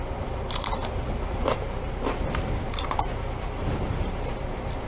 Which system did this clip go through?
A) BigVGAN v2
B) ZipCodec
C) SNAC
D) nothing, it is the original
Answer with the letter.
A